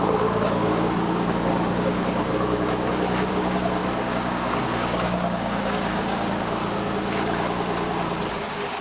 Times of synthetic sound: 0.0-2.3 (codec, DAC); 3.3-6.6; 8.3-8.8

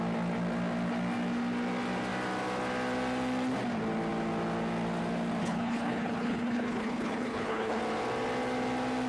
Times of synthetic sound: 5.4-7.8 (codec, HILCodec)